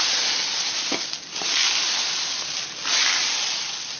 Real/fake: real